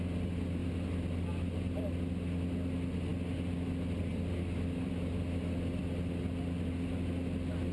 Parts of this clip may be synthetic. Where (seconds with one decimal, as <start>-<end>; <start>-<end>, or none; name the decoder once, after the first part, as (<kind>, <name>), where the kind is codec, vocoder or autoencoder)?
none